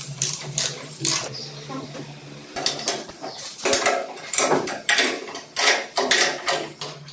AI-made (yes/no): yes